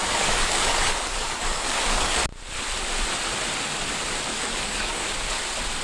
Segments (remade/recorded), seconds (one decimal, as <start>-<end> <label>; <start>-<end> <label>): 0.0-2.2 remade; 2.2-4.3 recorded; 4.3-5.1 remade; 5.1-5.8 recorded